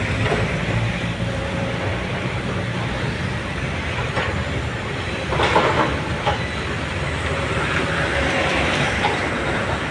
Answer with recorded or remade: remade